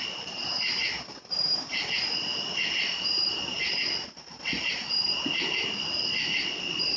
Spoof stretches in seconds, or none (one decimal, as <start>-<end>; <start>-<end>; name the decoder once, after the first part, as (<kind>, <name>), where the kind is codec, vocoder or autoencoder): none